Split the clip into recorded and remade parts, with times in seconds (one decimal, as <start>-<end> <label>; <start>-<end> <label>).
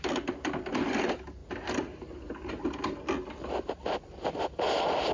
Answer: 0.0-5.1 recorded